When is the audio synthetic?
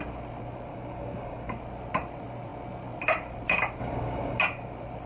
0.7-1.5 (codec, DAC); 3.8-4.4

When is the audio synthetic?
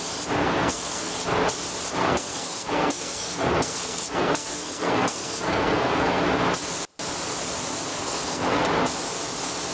0.4-1.1 (codec, SNAC); 2.0-6.2; 7.9-8.6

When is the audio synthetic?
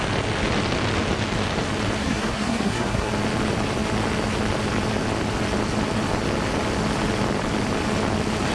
2.0-3.1 (codec, SNAC)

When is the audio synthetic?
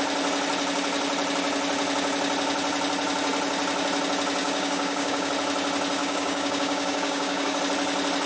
4.4-5.3 (codec, DAC); 6.0-7.6